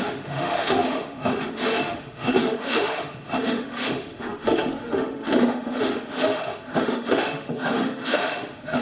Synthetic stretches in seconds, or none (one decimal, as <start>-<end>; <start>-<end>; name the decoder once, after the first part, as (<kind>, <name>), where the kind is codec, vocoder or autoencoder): 0.0-8.8 (autoencoder, DAC-VAE)